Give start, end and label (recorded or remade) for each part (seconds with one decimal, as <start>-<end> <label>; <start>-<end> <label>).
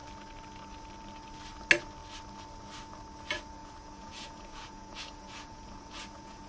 0.0-3.6 recorded; 3.6-6.5 remade